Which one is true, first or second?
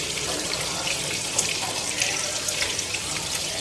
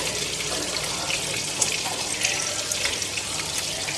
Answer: second